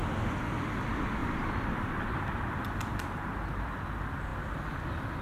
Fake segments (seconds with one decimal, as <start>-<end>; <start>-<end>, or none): 1.2-2.2; 2.9-3.9